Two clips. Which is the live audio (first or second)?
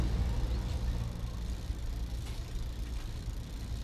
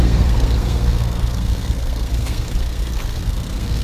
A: first